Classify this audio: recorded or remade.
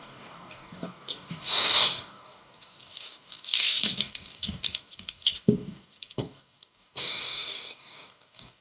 remade